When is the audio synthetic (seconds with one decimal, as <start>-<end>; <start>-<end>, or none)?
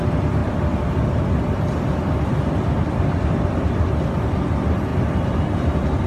0.4-4.1; 4.9-6.1